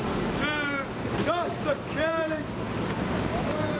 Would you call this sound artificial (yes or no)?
yes